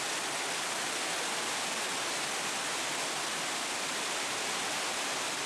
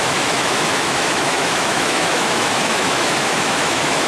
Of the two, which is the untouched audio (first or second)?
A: first